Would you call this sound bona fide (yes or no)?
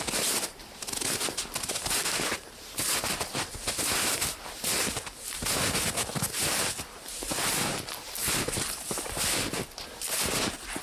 yes